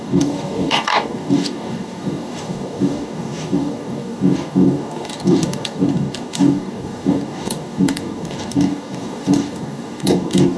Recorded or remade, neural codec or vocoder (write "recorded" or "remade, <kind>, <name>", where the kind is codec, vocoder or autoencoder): remade, codec, DAC